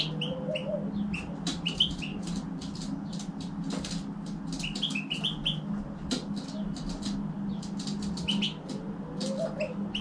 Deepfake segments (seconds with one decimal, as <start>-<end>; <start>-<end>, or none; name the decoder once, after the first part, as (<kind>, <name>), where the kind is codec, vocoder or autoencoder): none